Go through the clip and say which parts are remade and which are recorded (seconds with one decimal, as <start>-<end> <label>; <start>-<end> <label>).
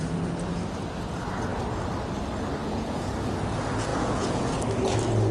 0.0-2.6 recorded; 2.6-3.3 remade; 3.3-3.9 recorded; 3.9-4.6 remade; 4.6-5.3 recorded